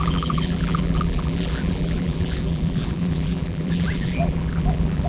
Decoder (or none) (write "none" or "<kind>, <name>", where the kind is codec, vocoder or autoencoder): vocoder, BigVGAN v2